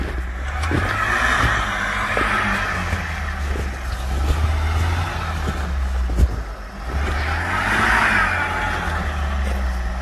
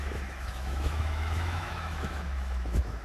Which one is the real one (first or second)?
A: first